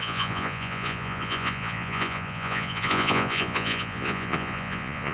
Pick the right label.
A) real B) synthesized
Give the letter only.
B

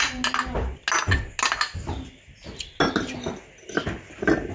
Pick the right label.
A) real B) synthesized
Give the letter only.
A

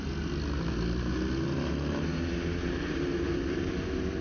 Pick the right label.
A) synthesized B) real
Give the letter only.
B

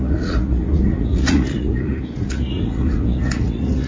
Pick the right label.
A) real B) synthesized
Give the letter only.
B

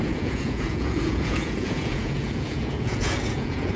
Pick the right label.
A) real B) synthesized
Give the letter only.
B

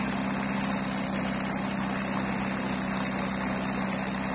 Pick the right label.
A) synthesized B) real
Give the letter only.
B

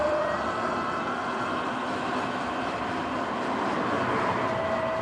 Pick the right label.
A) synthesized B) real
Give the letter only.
B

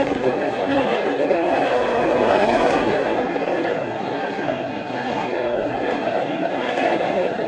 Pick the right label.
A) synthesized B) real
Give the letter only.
A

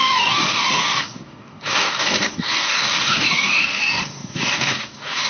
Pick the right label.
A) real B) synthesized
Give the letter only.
B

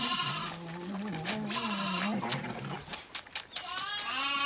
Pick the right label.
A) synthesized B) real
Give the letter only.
B